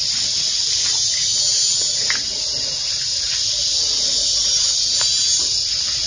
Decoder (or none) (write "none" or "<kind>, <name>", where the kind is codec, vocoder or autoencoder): none